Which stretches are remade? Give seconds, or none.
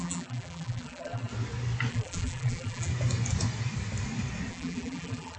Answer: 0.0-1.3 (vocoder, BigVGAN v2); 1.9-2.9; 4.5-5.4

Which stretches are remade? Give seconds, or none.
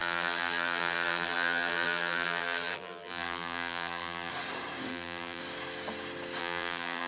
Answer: 0.0-4.3 (vocoder, BigVGAN v2); 4.9-5.4; 6.4-7.1